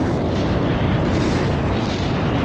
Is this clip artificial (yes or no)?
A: no